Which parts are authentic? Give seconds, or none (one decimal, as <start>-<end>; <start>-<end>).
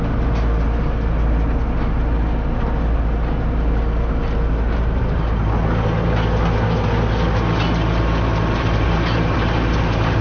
0.0-8.3